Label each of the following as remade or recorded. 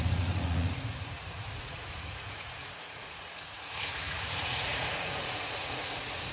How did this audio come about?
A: remade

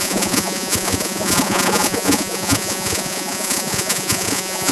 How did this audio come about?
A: remade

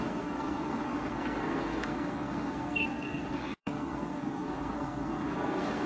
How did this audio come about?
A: remade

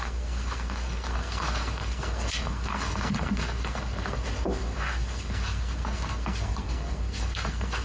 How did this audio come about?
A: remade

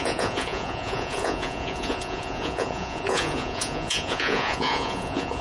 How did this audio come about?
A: remade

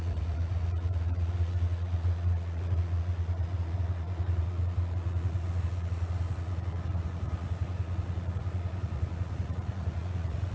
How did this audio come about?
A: remade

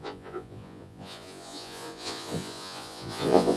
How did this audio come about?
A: remade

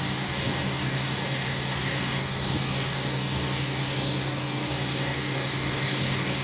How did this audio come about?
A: remade